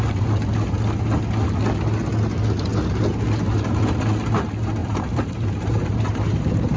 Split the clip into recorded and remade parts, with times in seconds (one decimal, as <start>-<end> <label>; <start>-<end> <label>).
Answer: 0.0-4.8 recorded; 4.8-6.8 remade